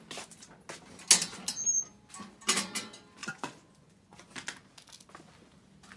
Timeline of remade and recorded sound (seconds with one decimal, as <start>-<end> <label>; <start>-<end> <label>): 0.0-3.2 recorded; 3.2-4.3 remade; 4.3-6.0 recorded